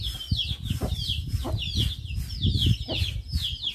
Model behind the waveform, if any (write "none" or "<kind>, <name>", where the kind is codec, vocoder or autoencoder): none